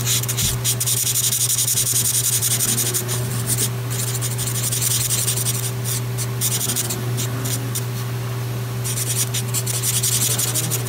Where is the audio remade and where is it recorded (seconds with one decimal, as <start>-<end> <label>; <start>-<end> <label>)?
0.0-10.9 recorded